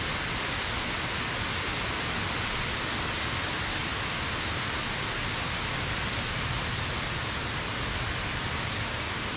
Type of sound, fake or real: real